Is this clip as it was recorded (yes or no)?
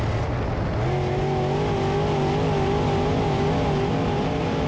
yes